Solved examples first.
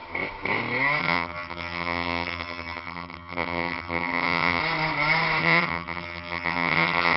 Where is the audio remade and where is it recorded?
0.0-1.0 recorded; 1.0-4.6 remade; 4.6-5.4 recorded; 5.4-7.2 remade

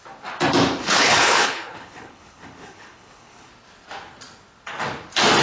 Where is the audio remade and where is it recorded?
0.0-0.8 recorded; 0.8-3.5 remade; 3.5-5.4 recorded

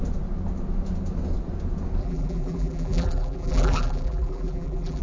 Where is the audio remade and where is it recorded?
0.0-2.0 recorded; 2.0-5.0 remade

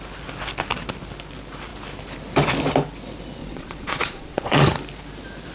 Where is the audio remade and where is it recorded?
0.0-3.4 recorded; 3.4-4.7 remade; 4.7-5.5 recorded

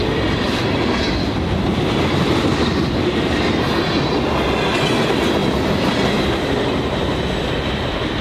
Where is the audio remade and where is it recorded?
0.0-1.7 recorded; 1.7-2.6 remade; 2.6-8.2 recorded

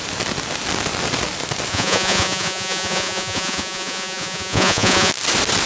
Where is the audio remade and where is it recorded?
0.0-1.7 recorded; 1.7-5.1 remade; 5.1-5.7 recorded

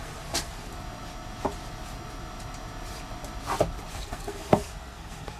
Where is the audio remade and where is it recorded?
0.0-0.7 remade; 0.7-3.9 recorded; 3.9-5.4 remade

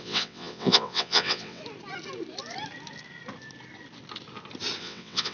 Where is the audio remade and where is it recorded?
0.0-1.6 remade; 1.6-4.8 recorded; 4.8-5.3 remade